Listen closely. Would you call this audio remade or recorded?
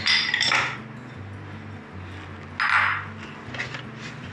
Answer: recorded